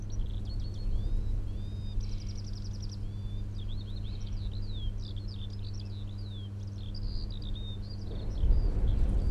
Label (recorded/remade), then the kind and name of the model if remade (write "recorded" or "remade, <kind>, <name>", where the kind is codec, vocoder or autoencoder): recorded